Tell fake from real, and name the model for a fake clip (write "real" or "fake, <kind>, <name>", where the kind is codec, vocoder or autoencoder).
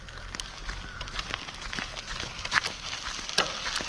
real